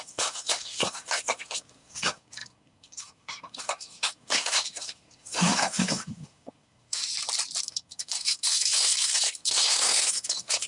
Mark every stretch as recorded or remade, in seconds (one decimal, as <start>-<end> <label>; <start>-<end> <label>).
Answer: 0.0-7.0 remade; 7.0-7.6 recorded; 7.6-10.7 remade